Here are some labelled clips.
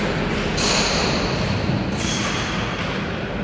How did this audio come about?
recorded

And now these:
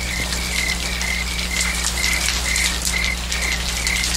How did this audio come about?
recorded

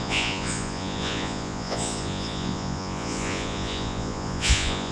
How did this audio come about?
remade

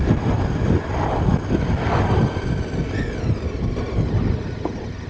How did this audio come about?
recorded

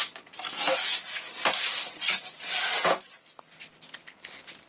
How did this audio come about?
recorded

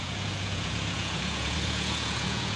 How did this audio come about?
remade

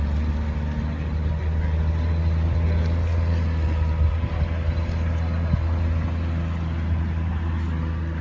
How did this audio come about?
recorded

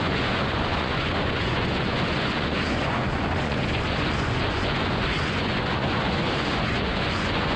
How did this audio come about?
remade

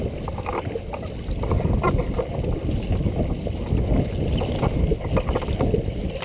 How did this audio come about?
recorded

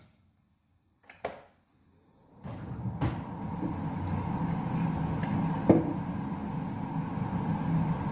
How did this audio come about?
recorded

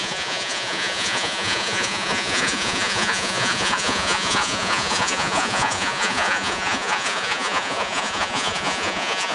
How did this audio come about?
remade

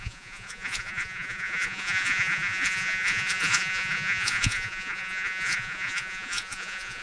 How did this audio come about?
remade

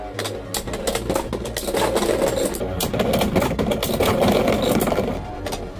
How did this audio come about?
recorded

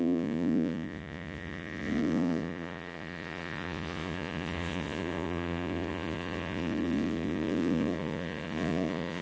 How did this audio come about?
remade